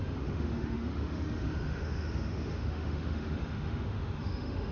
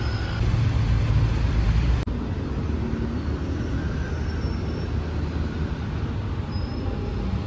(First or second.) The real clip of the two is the second